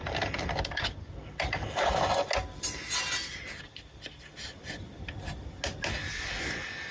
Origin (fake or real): real